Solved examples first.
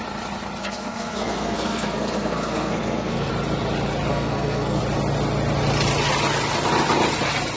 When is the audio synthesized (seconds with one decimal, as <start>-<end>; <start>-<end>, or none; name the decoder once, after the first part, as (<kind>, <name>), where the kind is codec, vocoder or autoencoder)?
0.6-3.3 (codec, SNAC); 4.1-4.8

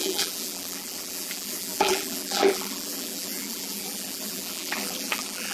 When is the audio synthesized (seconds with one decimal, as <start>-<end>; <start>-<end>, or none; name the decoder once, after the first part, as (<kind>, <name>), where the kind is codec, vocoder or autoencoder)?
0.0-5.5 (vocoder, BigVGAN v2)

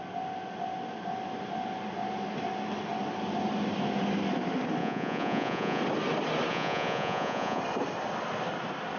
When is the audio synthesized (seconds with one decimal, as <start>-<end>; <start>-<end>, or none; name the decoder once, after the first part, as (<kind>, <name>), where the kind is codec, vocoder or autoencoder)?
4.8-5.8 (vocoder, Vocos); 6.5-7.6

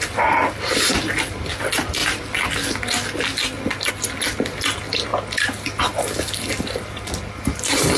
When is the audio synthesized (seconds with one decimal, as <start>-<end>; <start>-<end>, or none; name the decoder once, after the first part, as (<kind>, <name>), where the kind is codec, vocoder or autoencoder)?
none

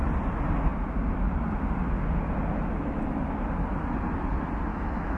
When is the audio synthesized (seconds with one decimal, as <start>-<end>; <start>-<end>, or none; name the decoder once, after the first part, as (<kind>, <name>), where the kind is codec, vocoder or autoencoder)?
4.7-5.2 (autoencoder, DAC-VAE)

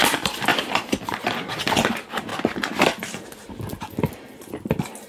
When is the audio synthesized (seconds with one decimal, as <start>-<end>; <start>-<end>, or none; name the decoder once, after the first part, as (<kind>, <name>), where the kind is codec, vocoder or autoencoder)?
0.0-2.3 (vocoder, BigVGAN v2)

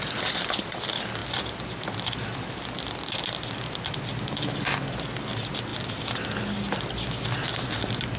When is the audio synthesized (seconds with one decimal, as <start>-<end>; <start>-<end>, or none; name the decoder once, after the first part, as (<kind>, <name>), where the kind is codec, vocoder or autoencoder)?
none

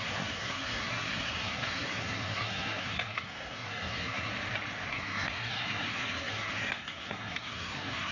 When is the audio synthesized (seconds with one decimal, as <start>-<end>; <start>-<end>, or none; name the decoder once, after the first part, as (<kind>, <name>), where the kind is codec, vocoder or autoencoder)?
0.0-4.3 (codec, SNAC); 4.9-8.1